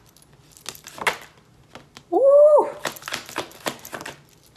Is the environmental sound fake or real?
real